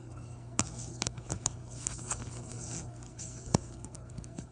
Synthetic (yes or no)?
yes